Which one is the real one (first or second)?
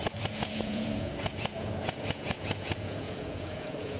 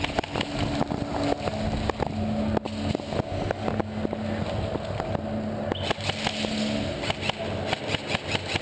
second